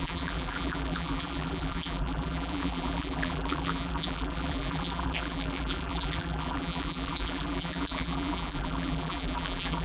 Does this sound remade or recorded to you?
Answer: remade